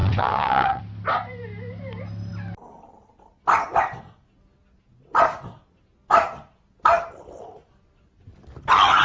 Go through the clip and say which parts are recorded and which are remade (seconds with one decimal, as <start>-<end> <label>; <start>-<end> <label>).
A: 0.0-0.8 remade; 0.8-9.0 recorded